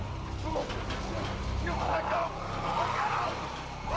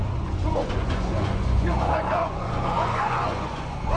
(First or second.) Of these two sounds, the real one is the first